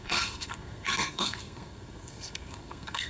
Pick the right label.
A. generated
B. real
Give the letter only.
A